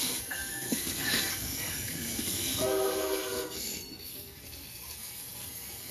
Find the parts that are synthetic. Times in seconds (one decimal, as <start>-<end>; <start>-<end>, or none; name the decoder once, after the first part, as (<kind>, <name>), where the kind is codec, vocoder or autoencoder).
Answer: 0.0-5.9 (codec, SNAC)